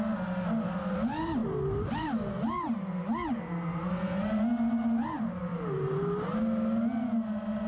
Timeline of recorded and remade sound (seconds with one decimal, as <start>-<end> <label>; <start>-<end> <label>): 0.0-5.5 recorded; 5.5-6.4 remade; 6.4-7.7 recorded